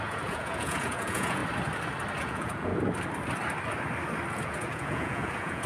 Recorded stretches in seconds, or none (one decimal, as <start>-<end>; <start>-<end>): 1.4-2.2; 2.7-4.3